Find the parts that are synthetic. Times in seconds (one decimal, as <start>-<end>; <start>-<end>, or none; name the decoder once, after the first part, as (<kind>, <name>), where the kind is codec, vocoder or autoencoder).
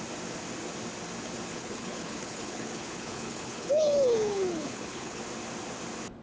1.5-5.2 (codec, HILCodec)